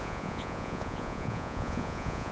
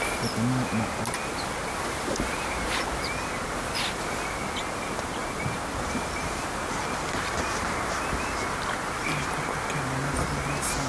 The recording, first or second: second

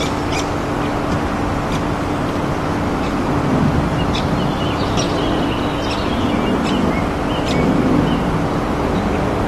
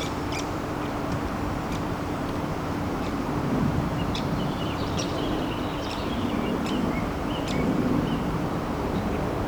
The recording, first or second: first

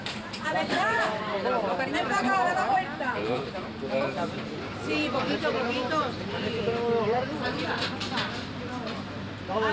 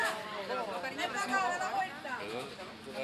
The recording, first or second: second